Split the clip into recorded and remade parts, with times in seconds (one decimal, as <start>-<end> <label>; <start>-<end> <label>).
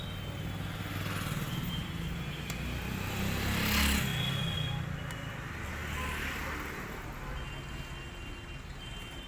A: 0.0-9.3 recorded